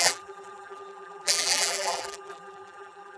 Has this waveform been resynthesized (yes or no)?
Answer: yes